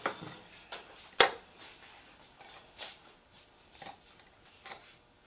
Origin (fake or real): real